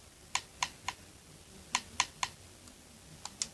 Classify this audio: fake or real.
real